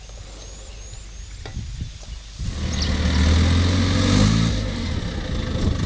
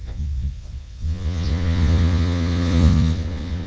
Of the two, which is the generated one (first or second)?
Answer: second